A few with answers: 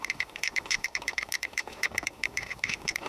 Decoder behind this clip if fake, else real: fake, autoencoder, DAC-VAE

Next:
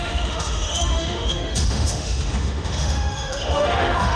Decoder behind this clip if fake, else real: fake, autoencoder, DAC-VAE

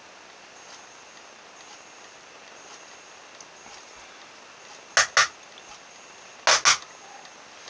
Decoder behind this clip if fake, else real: real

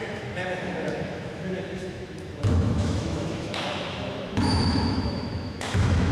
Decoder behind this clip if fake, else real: fake, autoencoder, DAC-VAE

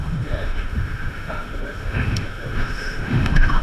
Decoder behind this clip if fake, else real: fake, autoencoder, DAC-VAE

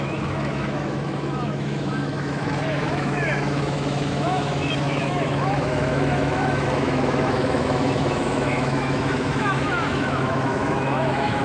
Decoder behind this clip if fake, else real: fake, autoencoder, DAC-VAE